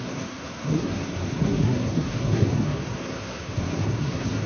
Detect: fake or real fake